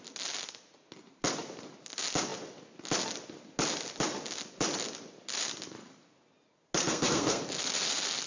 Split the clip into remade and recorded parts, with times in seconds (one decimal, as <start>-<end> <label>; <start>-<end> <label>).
0.0-6.8 recorded; 6.8-7.4 remade; 7.4-8.3 recorded